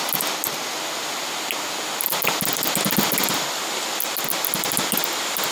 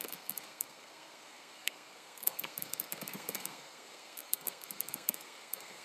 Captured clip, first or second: first